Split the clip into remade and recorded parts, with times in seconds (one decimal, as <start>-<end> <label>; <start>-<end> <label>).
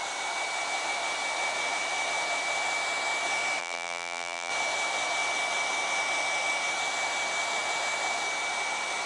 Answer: 0.0-3.6 recorded; 3.6-4.5 remade; 4.5-9.1 recorded